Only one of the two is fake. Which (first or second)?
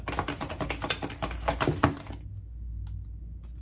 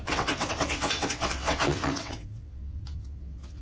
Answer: second